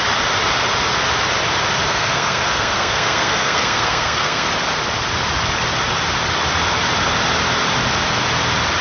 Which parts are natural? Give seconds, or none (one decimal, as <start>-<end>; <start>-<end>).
0.0-1.9; 4.5-8.8